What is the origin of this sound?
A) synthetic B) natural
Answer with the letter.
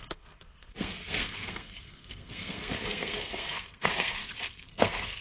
A